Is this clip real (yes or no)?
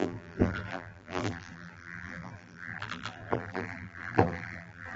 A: no